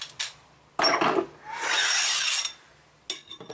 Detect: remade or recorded recorded